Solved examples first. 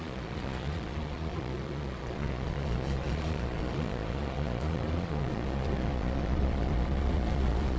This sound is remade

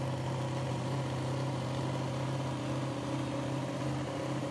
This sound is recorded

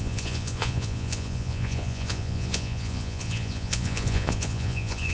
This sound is remade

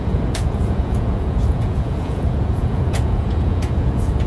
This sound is remade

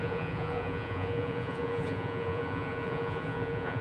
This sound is remade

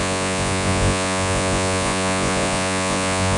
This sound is remade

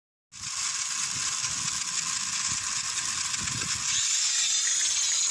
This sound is recorded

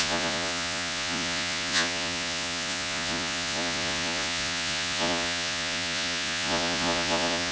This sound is remade